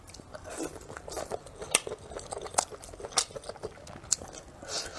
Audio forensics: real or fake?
real